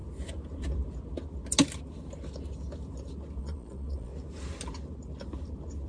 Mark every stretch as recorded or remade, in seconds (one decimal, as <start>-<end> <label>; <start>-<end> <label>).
0.0-3.4 recorded; 3.4-4.1 remade; 4.1-5.9 recorded